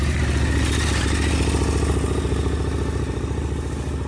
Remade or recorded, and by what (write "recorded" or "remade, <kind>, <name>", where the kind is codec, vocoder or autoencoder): recorded